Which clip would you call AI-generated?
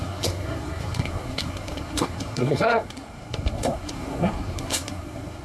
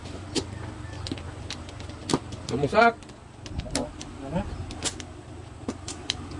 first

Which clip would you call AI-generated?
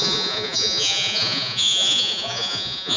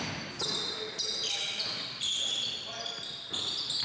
first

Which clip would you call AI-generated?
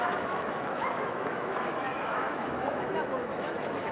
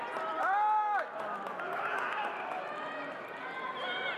first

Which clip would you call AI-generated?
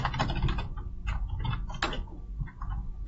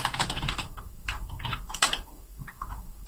second